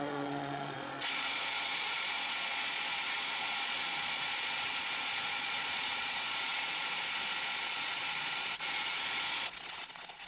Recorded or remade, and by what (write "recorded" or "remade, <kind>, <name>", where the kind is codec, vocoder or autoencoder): remade, vocoder, Vocos